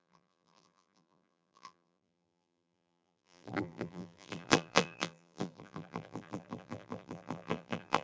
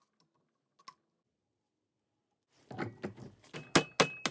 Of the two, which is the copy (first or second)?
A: first